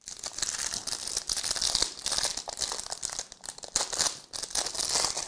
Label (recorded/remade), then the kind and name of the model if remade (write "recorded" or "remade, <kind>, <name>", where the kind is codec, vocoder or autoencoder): recorded